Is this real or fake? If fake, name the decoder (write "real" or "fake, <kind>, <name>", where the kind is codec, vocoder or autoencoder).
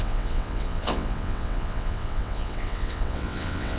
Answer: fake, vocoder, WaveNeXt